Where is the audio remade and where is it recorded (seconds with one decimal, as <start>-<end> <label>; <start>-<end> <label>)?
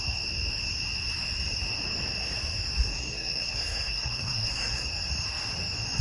0.0-2.9 recorded; 2.9-4.9 remade; 4.9-6.0 recorded